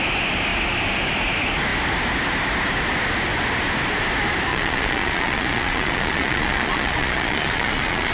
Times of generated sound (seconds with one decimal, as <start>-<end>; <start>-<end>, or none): 4.5-8.1